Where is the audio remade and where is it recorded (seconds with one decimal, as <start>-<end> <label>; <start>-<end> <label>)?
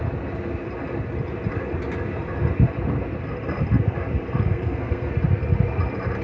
0.0-4.5 recorded; 4.5-5.1 remade; 5.1-6.2 recorded